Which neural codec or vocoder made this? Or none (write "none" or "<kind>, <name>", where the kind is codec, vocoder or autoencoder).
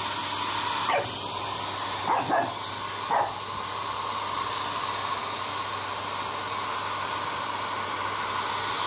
none